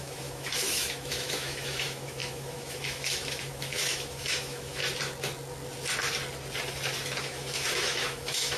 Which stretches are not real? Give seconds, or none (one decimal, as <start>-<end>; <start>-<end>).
0.0-4.8; 7.2-8.6